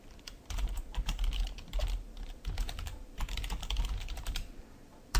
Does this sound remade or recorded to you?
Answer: remade